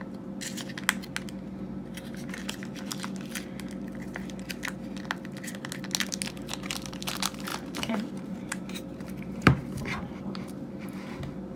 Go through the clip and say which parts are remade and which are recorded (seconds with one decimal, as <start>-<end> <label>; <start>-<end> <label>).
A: 0.0-1.8 recorded; 1.8-2.4 remade; 2.4-7.5 recorded; 7.5-10.7 remade; 10.7-11.6 recorded